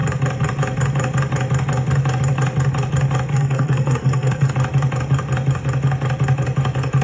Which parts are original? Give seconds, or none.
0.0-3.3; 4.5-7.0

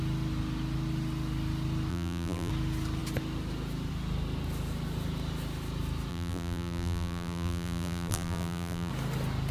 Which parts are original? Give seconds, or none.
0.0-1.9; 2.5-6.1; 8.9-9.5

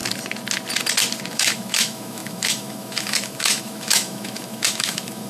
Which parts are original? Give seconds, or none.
0.0-1.3